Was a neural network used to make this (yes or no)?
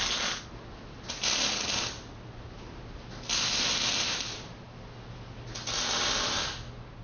no